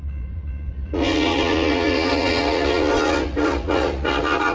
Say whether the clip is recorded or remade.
remade